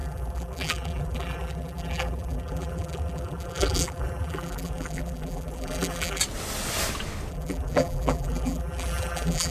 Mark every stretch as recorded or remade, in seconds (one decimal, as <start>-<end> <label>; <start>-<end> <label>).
0.0-6.2 remade; 6.2-7.3 recorded; 7.3-9.5 remade